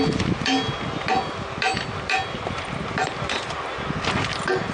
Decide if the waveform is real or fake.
real